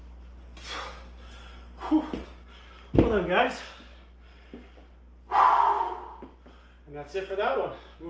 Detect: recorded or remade recorded